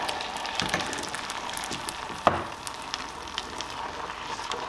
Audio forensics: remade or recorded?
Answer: remade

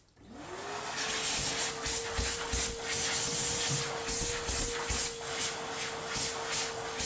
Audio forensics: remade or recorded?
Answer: recorded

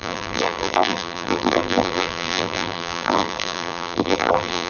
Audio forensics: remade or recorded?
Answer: remade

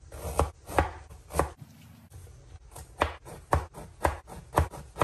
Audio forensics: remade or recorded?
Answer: recorded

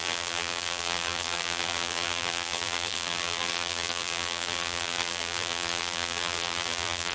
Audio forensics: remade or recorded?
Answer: remade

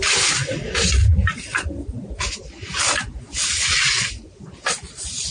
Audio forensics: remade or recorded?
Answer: recorded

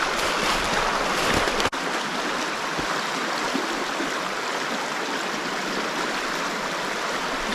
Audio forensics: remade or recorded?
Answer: recorded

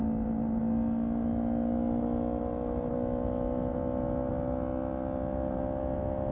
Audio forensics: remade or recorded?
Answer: recorded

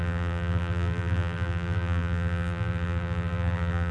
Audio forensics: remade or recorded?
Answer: remade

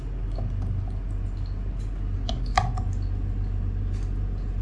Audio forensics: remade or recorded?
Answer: recorded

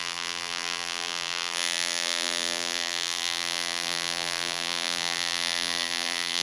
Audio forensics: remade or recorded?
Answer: remade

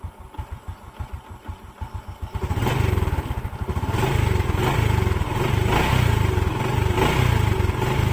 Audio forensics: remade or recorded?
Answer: recorded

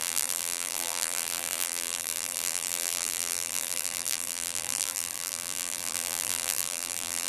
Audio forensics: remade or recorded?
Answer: remade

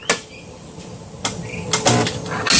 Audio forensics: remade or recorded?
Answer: recorded